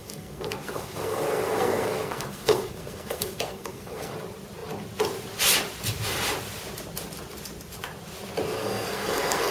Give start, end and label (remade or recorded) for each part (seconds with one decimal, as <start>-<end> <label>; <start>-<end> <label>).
0.0-4.1 remade; 4.1-8.6 recorded; 8.6-9.5 remade